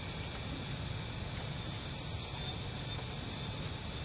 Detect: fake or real real